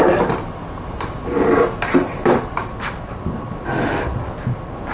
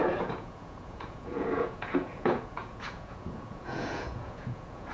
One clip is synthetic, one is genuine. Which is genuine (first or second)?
first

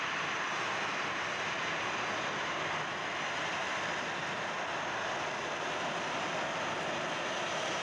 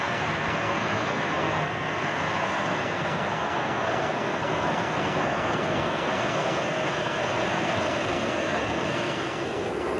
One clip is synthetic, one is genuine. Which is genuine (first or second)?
first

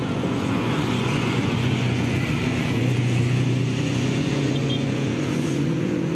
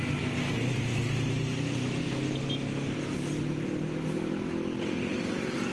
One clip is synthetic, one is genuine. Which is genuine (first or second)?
second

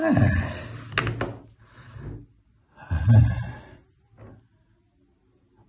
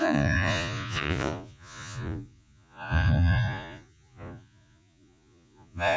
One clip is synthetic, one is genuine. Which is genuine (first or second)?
first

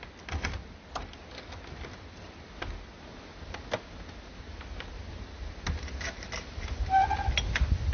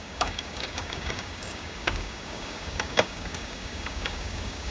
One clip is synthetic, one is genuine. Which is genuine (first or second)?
first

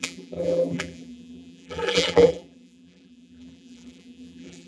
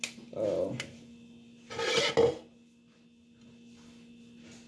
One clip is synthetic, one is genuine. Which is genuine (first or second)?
second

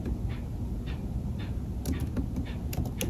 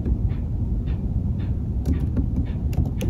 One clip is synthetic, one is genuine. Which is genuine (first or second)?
first